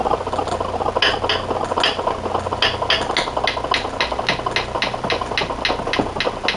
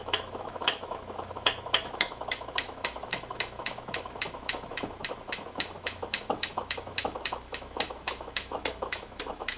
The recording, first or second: first